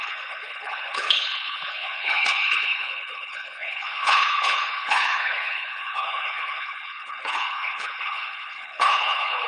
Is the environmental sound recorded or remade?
remade